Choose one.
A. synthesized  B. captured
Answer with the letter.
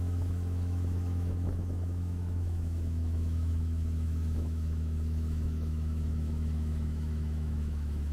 A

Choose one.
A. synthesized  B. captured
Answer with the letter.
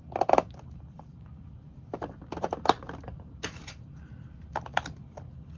A